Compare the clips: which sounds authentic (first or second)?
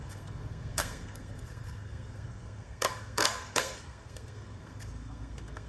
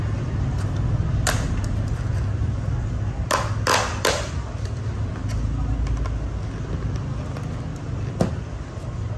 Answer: second